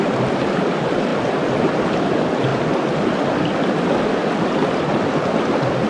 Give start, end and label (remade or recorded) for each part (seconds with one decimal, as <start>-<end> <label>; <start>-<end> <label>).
0.0-5.9 recorded